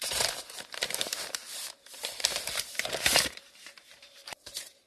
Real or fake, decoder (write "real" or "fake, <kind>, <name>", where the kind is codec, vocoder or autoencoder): fake, vocoder, BigVGAN v2